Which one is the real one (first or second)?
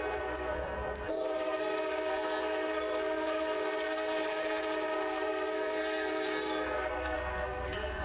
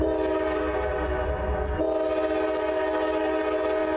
second